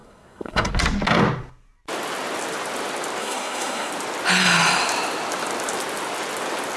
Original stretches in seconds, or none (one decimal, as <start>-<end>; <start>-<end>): 0.7-3.2; 3.9-6.8